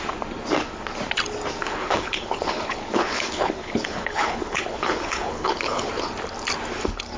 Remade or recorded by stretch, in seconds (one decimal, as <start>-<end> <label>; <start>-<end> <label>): 0.0-1.6 recorded; 1.6-5.9 remade; 5.9-7.2 recorded